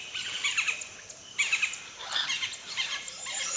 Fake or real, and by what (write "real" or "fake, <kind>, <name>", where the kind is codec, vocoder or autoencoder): fake, vocoder, BigVGAN v2